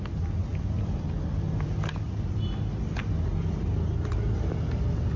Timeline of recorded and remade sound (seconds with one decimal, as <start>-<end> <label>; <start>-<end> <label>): 0.0-0.5 recorded; 0.5-1.7 remade; 1.7-5.2 recorded